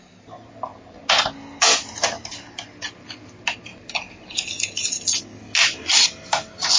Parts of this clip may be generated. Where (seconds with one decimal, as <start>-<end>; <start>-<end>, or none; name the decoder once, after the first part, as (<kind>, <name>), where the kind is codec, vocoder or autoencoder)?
none